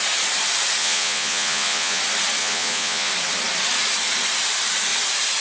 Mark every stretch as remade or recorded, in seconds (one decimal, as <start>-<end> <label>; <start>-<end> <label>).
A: 0.0-0.8 recorded; 0.8-2.0 remade; 2.0-2.4 recorded; 2.4-3.1 remade; 3.1-5.4 recorded